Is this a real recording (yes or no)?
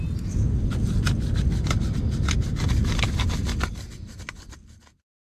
yes